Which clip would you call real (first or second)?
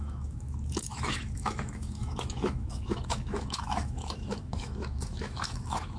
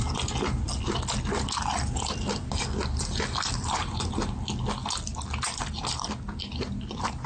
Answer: second